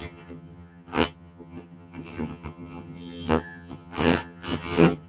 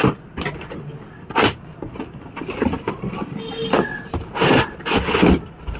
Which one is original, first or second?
second